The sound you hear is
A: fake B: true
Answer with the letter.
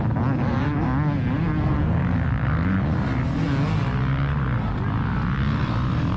B